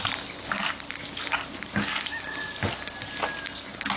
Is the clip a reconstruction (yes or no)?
no